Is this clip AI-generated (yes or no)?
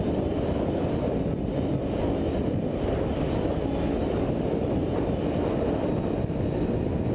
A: no